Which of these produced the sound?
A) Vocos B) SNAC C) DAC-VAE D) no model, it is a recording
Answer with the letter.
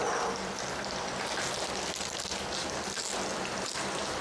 D